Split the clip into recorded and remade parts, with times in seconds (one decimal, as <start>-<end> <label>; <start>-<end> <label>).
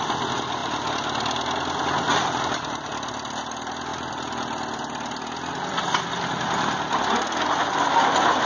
0.0-8.5 recorded